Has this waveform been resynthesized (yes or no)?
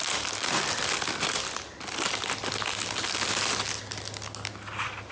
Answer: no